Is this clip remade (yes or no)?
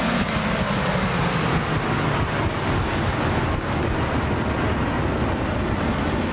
no